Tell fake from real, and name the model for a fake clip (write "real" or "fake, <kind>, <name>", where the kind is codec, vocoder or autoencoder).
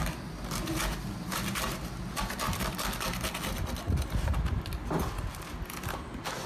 real